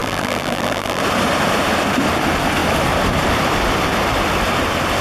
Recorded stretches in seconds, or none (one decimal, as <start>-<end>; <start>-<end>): 1.0-5.0